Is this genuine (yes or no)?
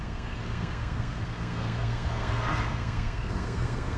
no